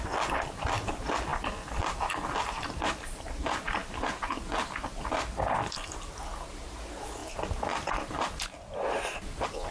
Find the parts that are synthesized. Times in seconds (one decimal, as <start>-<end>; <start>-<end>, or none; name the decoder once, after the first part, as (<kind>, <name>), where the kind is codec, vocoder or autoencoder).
none

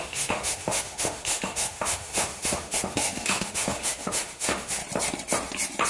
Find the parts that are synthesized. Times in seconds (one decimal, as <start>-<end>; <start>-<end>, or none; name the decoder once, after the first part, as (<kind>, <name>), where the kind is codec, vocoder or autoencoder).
0.0-4.8 (autoencoder, DAC-VAE)

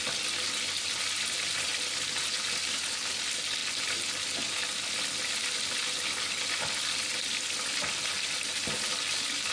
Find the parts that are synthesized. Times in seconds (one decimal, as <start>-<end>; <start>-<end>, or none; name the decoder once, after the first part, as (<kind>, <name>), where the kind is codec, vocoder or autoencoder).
none